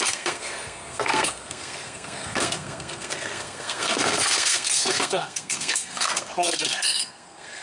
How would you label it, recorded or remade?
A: remade